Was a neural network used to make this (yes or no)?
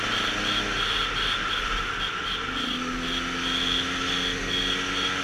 no